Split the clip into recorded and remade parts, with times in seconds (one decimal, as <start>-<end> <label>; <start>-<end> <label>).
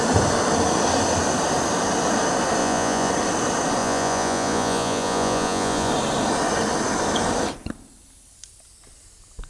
0.0-2.6 recorded; 2.6-3.1 remade; 3.1-3.8 recorded; 3.8-5.9 remade; 5.9-9.5 recorded